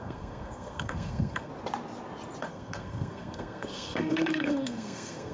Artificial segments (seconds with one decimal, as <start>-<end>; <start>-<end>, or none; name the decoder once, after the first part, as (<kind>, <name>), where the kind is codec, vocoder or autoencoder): 0.0-1.5 (codec, SNAC); 2.4-5.3